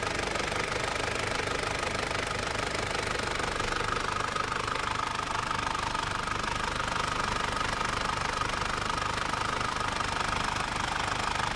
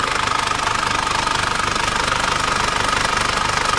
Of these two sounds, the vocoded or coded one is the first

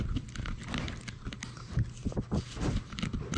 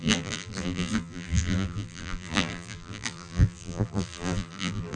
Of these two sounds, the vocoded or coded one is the second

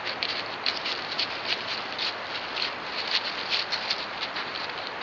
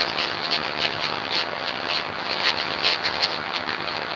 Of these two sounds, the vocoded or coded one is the second